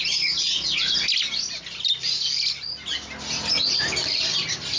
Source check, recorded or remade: recorded